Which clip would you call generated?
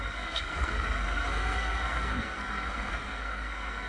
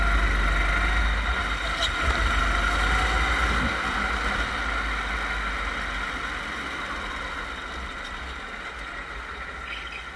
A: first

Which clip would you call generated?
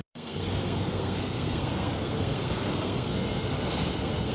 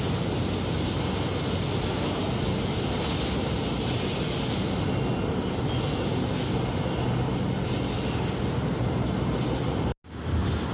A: first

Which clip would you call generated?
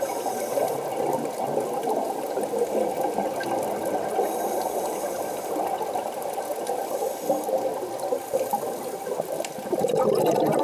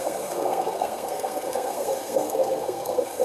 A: second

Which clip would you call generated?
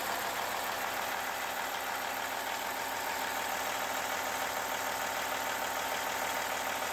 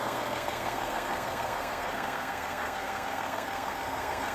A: second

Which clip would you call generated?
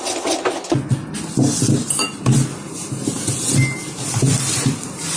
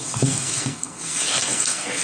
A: second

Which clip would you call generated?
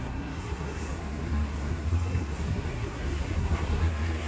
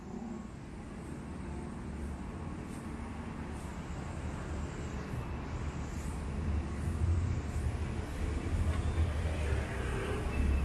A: first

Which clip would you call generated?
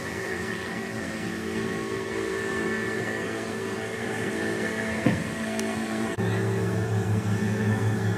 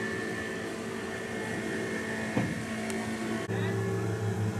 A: first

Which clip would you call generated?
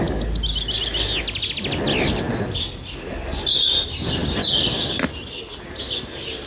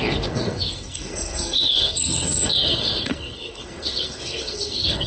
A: second